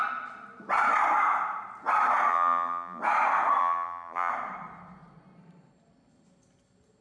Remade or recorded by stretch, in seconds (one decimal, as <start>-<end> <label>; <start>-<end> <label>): 0.0-2.3 recorded; 2.3-3.0 remade; 3.0-3.6 recorded; 3.6-4.3 remade; 4.3-7.0 recorded